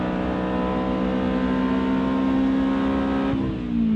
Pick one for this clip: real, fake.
real